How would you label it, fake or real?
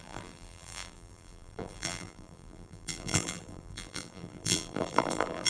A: fake